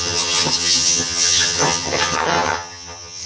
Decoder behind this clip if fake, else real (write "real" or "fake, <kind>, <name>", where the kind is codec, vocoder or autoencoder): fake, vocoder, HiFi-GAN